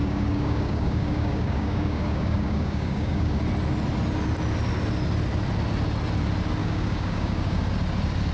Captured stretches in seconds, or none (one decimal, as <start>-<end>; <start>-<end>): 3.4-6.6; 7.6-8.3